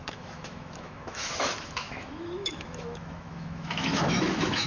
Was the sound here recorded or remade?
remade